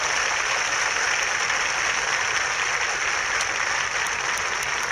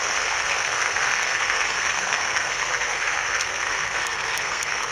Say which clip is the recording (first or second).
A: first